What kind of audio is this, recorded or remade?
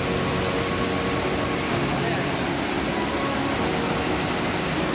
recorded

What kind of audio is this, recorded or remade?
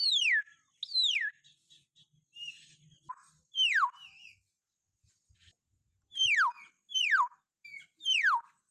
recorded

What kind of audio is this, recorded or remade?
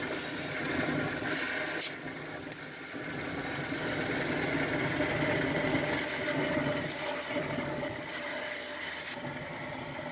recorded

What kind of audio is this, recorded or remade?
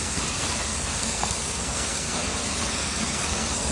remade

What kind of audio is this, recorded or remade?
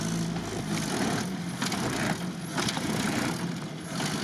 recorded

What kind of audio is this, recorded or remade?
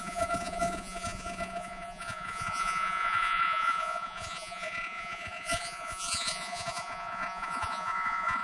remade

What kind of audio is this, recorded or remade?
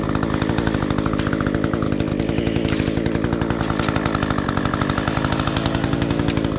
recorded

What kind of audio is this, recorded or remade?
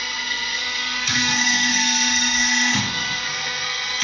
remade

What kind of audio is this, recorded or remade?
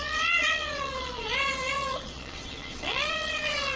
remade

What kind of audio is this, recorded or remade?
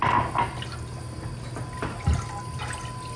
recorded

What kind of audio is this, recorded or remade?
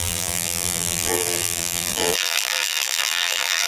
remade